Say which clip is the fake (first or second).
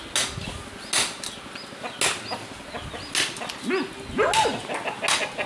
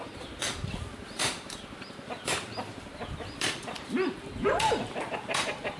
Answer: second